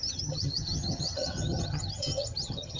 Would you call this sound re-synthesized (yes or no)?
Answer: yes